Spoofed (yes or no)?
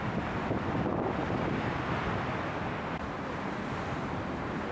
no